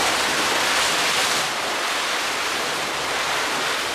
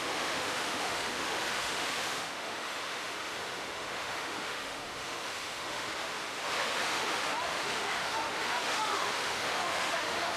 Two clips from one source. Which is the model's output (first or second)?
second